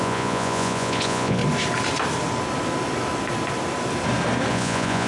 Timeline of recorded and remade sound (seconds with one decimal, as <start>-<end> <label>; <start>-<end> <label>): 0.0-1.4 remade; 1.4-4.5 recorded; 4.5-5.1 remade